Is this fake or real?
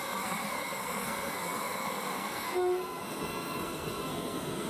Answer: fake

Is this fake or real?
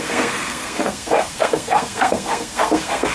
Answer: fake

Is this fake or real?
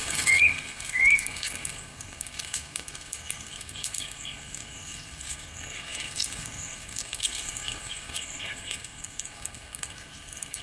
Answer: fake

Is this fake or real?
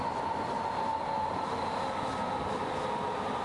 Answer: real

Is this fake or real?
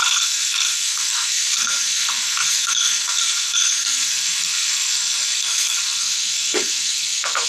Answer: fake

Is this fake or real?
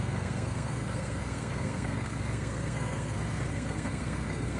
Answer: fake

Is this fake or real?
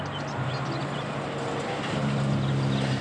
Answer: real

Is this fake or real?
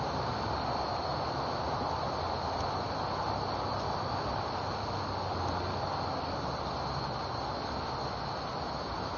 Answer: real